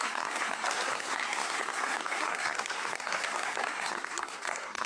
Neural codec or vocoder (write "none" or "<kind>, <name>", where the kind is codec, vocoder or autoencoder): codec, SNAC